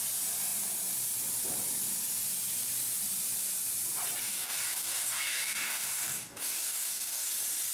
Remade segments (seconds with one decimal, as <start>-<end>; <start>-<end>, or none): 4.2-7.3